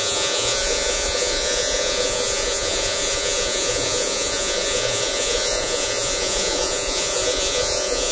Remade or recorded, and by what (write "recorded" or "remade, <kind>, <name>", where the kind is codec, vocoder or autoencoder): remade, vocoder, Vocos